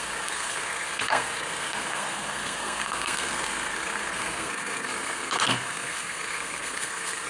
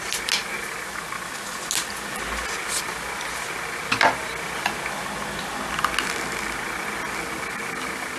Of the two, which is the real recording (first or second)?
second